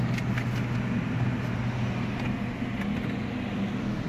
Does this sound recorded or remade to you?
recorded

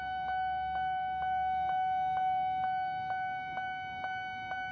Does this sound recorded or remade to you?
recorded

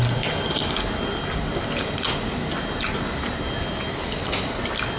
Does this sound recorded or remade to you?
recorded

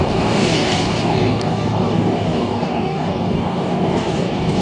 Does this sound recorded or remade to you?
remade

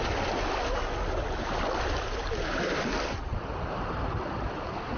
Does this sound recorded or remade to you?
recorded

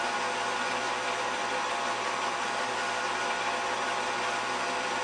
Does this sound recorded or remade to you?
recorded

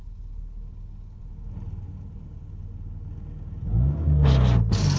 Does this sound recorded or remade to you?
recorded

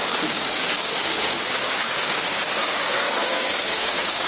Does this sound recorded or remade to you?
remade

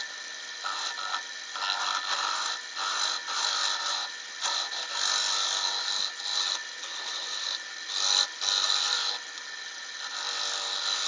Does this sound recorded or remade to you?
recorded